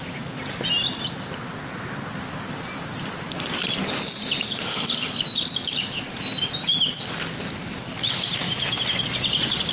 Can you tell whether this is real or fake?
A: real